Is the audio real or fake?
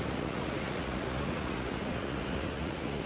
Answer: fake